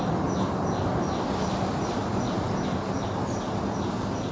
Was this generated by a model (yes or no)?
no